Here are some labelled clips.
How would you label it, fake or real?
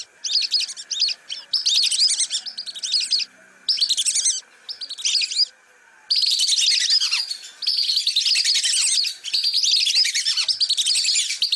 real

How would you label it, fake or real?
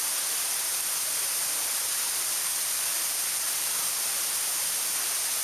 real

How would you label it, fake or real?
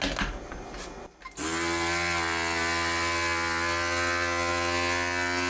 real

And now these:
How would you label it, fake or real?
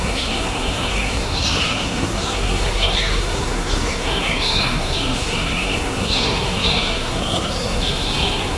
fake